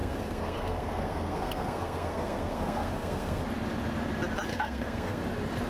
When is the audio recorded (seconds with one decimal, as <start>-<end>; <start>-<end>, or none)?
3.4-4.5; 5.2-5.7